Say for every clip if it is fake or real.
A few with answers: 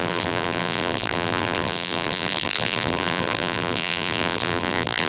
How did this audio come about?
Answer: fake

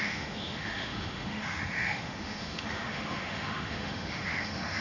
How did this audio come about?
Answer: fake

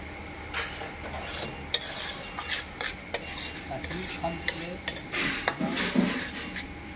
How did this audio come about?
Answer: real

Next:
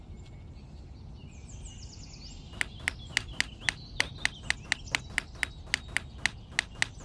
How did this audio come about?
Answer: real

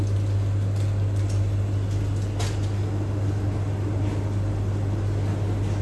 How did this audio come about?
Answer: real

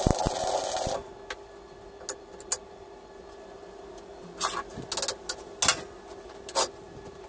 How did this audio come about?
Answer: real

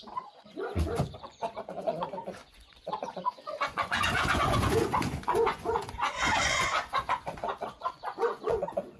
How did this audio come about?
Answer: fake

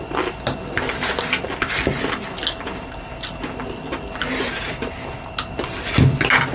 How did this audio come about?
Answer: real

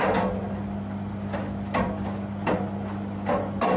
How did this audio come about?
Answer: real